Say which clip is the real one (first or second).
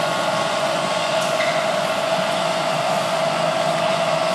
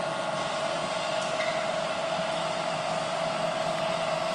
second